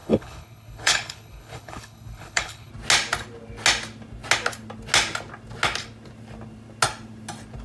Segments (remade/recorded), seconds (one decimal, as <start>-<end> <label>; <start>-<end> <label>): 0.0-2.7 remade; 2.7-7.6 recorded